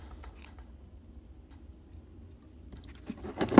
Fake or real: real